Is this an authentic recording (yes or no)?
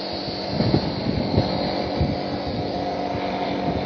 yes